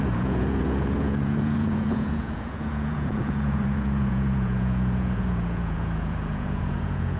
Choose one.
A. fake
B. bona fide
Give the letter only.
A